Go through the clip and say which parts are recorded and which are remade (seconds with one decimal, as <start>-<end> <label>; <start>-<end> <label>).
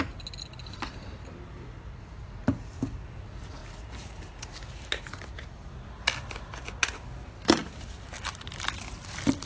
0.0-9.5 recorded